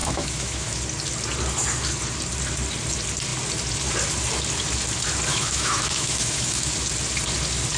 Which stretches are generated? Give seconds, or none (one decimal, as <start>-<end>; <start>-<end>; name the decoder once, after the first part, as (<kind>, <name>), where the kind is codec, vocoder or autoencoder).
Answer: 0.0-0.8 (autoencoder, DAC-VAE); 5.3-6.7